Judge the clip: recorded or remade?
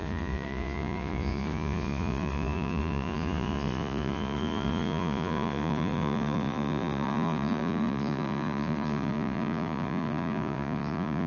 remade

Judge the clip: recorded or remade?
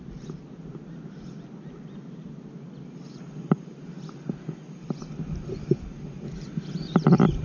recorded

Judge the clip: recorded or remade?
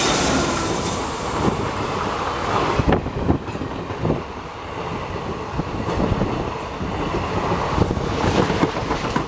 recorded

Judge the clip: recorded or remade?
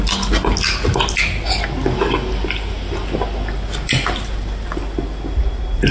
recorded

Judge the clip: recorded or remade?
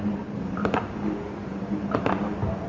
recorded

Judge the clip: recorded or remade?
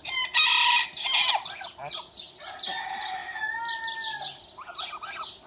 recorded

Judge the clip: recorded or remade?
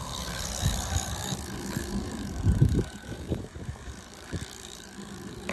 remade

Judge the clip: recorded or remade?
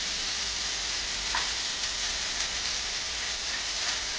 remade